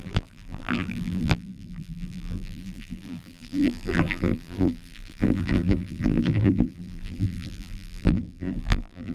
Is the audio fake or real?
fake